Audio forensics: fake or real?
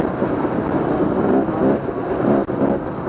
real